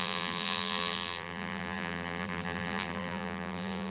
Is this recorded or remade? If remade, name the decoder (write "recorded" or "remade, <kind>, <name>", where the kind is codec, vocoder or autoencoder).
remade, vocoder, BigVGAN v2